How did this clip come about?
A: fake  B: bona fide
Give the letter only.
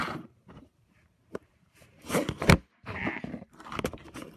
A